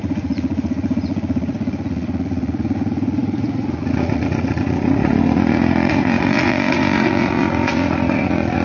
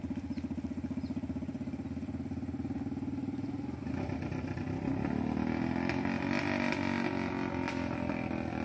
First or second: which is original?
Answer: second